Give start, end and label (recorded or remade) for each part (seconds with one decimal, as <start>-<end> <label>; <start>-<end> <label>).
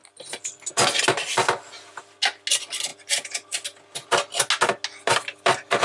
0.0-5.8 recorded